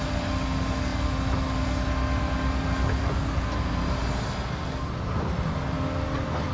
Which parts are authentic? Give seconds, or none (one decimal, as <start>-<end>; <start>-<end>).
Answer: 0.0-6.5